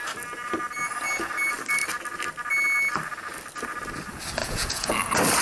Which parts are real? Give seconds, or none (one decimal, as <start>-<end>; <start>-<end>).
0.0-4.4; 4.9-5.4